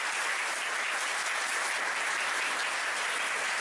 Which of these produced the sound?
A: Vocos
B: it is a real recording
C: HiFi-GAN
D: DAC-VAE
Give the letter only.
B